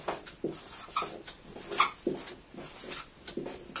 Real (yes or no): yes